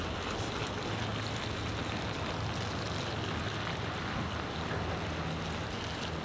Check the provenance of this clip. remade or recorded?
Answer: recorded